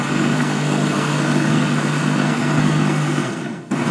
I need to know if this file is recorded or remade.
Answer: remade